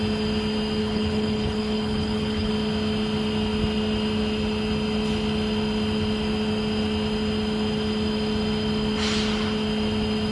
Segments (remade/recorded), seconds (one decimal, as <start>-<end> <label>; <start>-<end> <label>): 0.0-0.8 recorded; 0.8-2.5 remade; 2.5-10.3 recorded